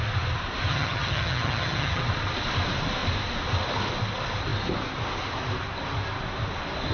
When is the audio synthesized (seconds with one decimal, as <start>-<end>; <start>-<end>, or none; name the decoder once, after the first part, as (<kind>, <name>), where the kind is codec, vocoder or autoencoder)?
0.7-2.0 (vocoder, HiFi-GAN)